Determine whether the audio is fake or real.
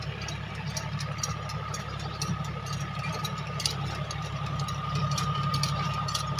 real